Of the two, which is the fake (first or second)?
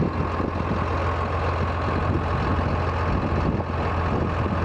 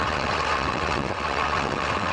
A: second